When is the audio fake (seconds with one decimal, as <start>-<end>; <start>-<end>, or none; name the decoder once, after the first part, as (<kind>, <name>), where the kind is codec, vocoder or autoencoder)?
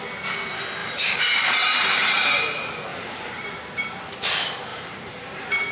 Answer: 0.8-2.4 (vocoder, BigVGAN v2); 2.9-3.8; 4.7-5.7